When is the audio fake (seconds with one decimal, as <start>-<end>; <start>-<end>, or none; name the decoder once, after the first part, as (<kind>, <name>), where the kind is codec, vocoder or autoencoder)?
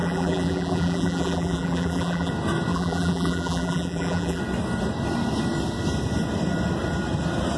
0.0-2.3 (vocoder, BigVGAN v2); 2.7-4.4